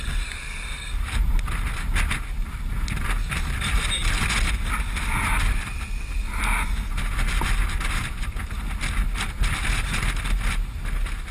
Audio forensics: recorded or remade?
recorded